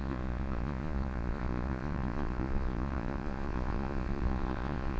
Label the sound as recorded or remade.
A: remade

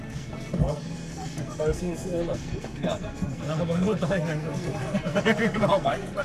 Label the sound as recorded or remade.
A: remade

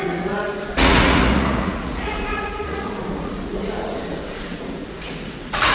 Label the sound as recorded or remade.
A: remade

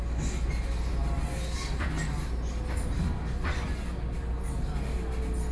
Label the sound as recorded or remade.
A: recorded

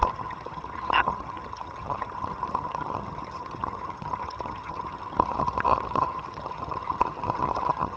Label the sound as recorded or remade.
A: remade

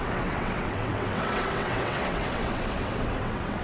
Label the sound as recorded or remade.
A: remade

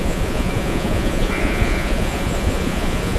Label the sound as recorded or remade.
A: remade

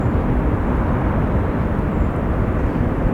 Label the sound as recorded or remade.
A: remade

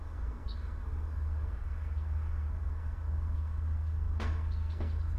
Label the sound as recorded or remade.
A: remade